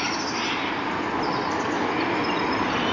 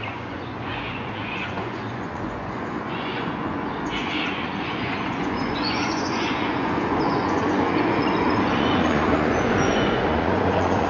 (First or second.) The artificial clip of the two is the second